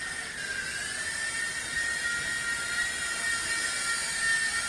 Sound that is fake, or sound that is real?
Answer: real